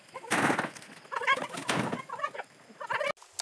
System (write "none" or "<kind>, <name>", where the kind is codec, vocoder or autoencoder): none